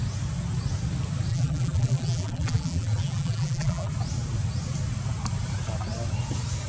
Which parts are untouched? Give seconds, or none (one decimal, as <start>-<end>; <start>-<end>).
0.0-1.3; 3.9-6.7